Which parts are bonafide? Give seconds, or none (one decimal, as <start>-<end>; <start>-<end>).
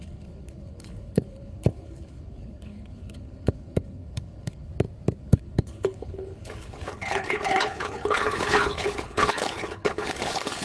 4.7-5.2